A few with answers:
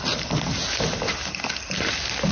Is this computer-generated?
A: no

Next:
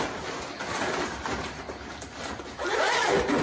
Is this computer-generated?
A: no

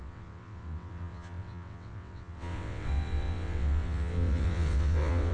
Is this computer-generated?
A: yes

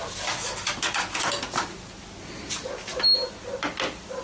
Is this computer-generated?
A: no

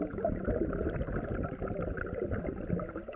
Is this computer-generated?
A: no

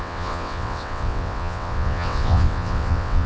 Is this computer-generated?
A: yes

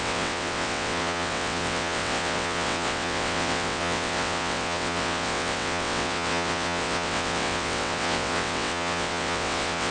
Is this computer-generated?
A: yes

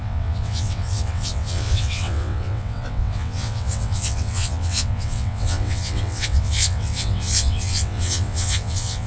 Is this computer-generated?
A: yes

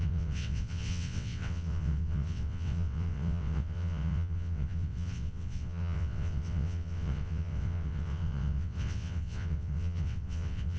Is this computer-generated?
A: yes